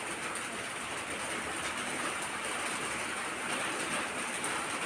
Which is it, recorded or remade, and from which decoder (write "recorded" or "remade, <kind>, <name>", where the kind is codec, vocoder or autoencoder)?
remade, vocoder, BigVGAN v2